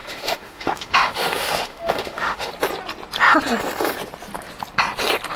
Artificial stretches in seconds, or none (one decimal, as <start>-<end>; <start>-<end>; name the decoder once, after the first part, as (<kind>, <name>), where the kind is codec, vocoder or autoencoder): 0.0-2.5 (autoencoder, DAC-VAE)